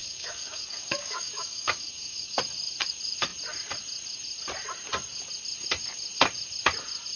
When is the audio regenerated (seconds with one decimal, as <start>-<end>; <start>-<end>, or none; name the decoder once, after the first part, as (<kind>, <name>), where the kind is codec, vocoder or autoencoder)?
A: 0.0-2.4 (codec, DAC)